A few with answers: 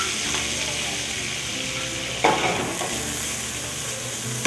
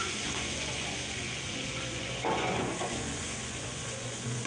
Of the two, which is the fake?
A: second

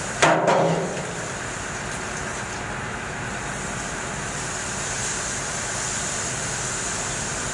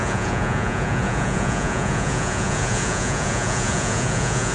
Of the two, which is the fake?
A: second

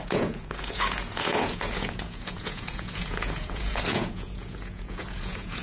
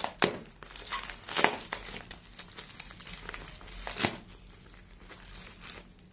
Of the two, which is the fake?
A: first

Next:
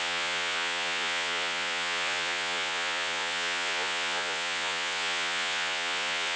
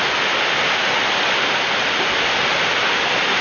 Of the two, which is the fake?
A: first